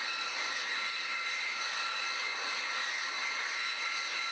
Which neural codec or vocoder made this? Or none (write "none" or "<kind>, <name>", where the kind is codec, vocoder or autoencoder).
none